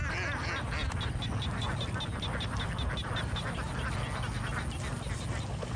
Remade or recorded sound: recorded